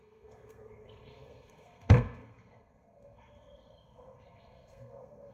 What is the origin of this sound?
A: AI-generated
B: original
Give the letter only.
A